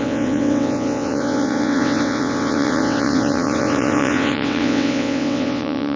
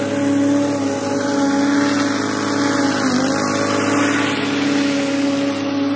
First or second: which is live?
second